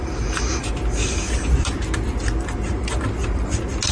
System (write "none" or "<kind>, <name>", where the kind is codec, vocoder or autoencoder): none